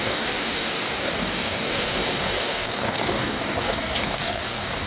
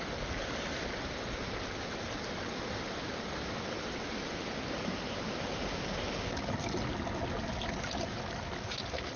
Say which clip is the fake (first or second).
first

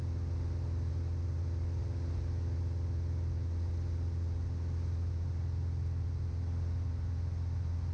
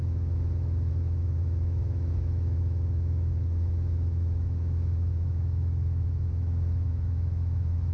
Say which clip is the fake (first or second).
second